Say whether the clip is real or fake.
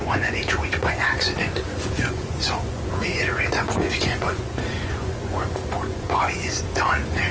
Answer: fake